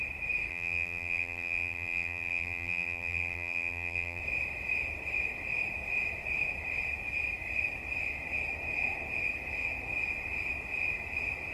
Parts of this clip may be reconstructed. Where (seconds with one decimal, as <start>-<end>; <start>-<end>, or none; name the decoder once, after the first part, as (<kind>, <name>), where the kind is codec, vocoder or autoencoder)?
0.5-4.2 (vocoder, BigVGAN v2)